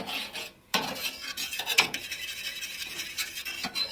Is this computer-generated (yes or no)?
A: yes